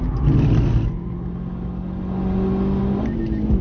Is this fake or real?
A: real